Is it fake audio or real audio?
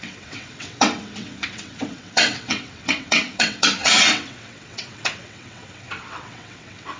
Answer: fake